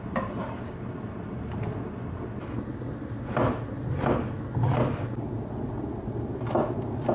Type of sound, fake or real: real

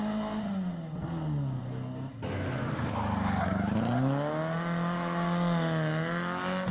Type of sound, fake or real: real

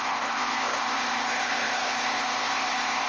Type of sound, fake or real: fake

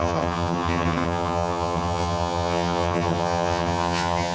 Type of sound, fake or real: fake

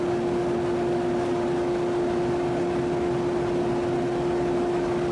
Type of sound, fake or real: real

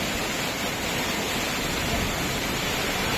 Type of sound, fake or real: real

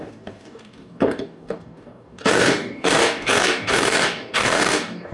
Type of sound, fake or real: fake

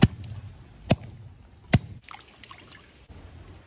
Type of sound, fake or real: real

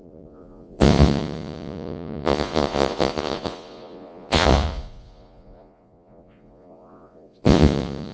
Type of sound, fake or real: fake